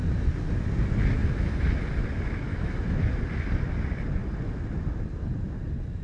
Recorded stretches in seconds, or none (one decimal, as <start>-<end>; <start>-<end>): 0.0-2.5; 3.1-6.0